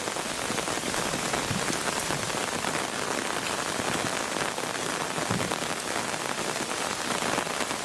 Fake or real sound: real